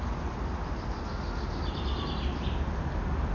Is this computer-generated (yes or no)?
no